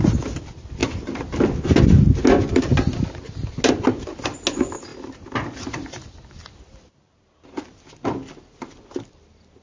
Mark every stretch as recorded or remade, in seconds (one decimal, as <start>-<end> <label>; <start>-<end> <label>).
0.0-9.6 recorded